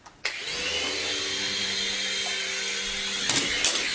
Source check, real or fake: real